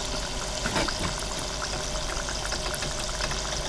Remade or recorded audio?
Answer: recorded